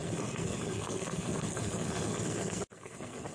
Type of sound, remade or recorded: remade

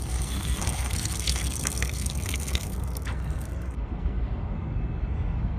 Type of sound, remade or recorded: remade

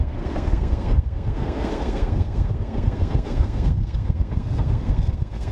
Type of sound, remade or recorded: remade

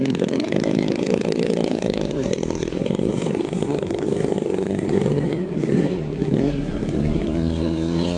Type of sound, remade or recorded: remade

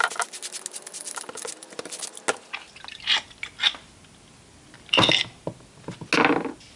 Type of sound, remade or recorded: recorded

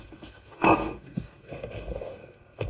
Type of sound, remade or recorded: remade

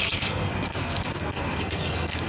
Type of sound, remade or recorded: remade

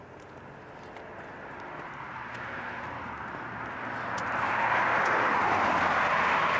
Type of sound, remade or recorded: recorded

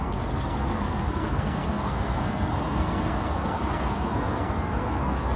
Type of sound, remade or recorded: remade